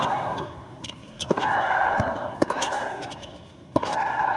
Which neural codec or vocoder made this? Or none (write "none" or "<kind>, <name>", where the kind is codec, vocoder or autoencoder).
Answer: codec, SNAC